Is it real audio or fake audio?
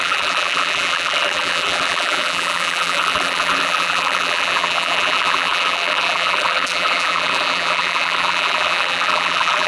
fake